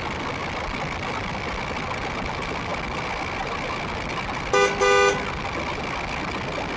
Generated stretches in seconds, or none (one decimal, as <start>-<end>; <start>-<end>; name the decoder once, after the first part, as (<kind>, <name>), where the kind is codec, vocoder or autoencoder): none